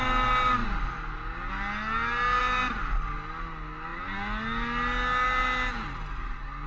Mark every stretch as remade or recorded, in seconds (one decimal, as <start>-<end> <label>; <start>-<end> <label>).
0.0-6.7 recorded